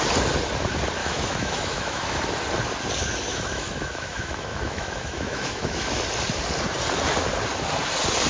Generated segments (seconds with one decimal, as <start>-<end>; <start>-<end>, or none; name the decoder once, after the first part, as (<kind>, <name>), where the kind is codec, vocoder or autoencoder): 1.0-2.2 (autoencoder, DAC-VAE); 3.3-6.0